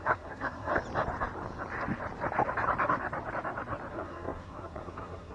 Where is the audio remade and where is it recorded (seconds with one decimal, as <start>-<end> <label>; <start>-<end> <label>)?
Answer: 0.0-0.7 remade; 0.7-3.9 recorded; 3.9-5.3 remade